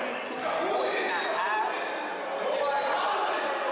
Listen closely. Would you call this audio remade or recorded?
recorded